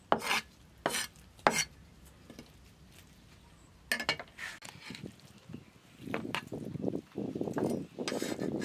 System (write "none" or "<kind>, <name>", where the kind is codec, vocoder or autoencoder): none